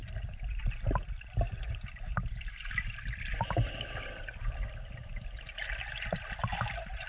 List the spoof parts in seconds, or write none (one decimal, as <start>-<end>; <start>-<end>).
none